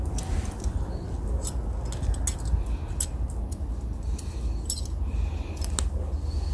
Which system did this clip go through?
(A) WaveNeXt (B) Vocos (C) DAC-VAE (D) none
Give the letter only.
D